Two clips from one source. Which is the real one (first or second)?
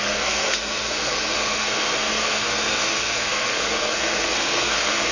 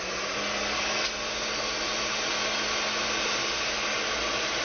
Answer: second